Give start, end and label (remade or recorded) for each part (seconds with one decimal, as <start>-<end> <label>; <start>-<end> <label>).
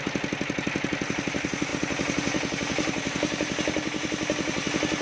0.0-5.0 recorded